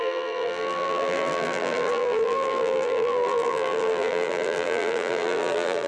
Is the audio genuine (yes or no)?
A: no